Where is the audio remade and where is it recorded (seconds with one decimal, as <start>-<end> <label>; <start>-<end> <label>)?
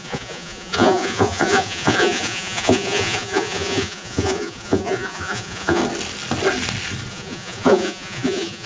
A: 0.0-5.8 remade; 5.8-7.1 recorded; 7.1-8.7 remade